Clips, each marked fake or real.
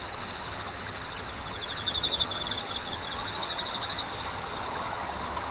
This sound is fake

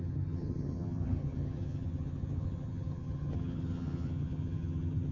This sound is fake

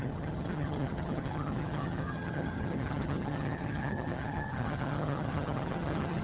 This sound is fake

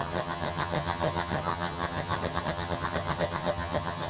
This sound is fake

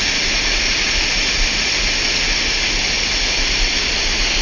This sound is real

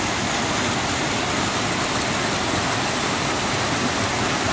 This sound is real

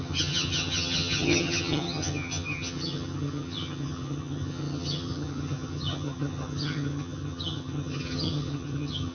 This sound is fake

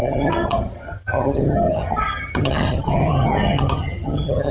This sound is fake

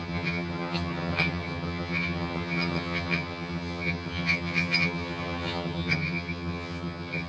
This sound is fake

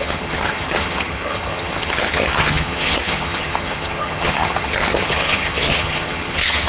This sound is fake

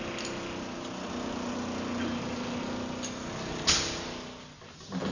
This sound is real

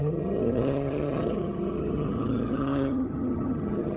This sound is fake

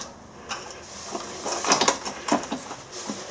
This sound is real